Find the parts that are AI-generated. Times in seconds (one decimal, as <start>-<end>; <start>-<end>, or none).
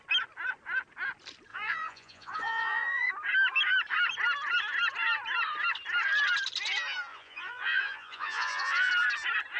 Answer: 1.5-3.1; 7.1-8.9